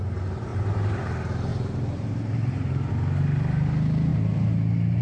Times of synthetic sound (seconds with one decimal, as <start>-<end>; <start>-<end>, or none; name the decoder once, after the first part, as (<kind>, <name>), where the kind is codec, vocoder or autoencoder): 0.5-1.0 (vocoder, BigVGAN v2); 1.5-2.9